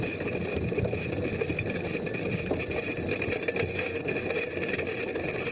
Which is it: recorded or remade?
recorded